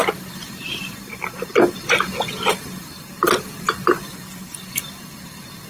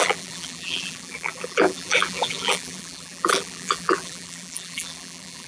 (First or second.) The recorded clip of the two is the first